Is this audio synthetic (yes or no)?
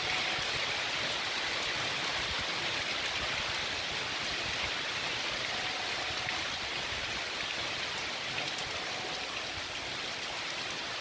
no